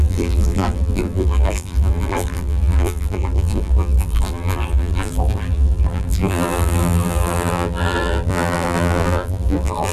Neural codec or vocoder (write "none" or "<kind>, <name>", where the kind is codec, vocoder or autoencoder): vocoder, BigVGAN v2